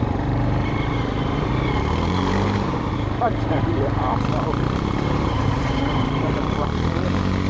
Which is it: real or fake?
fake